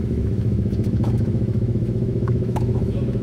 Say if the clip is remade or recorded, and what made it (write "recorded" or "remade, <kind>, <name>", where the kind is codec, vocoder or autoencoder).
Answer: remade, autoencoder, DAC-VAE